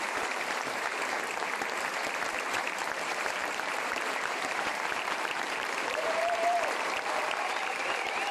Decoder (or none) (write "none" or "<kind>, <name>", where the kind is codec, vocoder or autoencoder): vocoder, BigVGAN v2